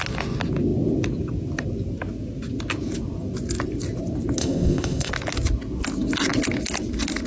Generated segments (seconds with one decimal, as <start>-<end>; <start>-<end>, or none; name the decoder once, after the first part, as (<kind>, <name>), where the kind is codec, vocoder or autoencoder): 4.4-5.1 (codec, ZipCodec)